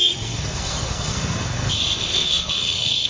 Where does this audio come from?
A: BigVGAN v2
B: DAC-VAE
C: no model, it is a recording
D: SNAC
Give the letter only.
D